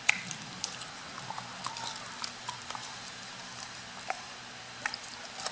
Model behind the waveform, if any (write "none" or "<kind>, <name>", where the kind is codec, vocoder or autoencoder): none